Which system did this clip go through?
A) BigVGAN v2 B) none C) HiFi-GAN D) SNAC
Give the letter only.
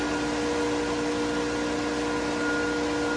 B